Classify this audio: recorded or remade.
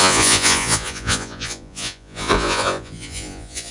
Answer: remade